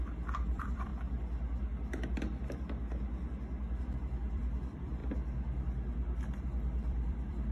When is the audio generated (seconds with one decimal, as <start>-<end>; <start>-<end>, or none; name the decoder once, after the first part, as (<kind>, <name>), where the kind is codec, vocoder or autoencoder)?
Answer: 0.0-0.9 (vocoder, BigVGAN v2); 3.8-5.0; 6.4-7.5